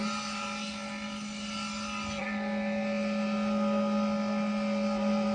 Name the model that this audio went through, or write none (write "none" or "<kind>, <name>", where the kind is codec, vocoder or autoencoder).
none